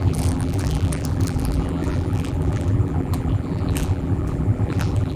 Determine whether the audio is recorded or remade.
remade